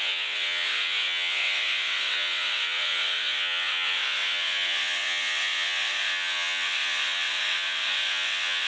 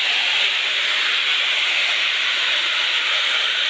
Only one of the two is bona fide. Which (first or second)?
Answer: second